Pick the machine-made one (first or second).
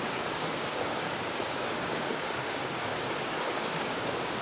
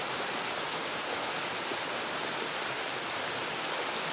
first